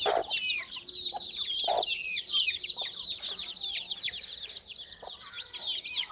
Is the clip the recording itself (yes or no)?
yes